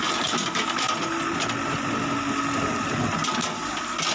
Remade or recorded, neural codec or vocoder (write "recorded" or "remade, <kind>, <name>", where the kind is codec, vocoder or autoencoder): recorded